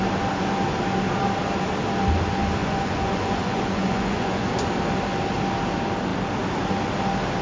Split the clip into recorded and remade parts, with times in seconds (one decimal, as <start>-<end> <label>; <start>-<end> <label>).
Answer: 0.0-2.6 recorded; 2.6-4.5 remade; 4.5-7.4 recorded